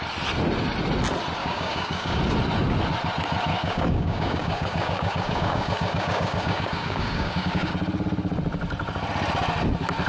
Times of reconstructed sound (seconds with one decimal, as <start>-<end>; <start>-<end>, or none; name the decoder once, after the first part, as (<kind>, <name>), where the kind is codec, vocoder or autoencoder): 1.4-2.2 (codec, DAC); 3.5-7.7